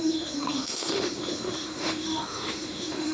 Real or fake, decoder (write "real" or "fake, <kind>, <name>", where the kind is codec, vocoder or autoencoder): fake, autoencoder, DAC-VAE